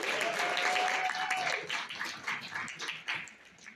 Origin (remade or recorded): recorded